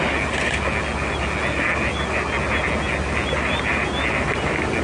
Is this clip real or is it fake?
real